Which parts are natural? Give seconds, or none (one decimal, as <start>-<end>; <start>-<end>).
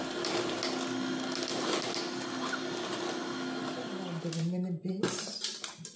0.0-6.0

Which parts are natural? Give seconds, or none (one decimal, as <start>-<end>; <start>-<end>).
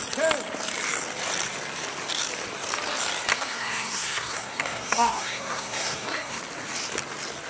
0.0-3.3; 6.4-7.5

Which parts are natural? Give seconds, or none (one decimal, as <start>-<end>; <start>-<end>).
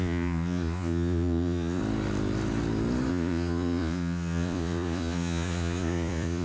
1.8-3.1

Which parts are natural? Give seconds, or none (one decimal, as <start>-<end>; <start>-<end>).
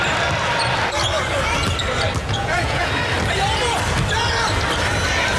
0.0-2.2; 2.9-5.4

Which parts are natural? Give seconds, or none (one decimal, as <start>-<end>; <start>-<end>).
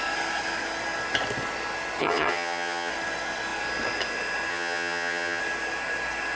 0.0-2.0; 2.9-4.5; 5.4-6.3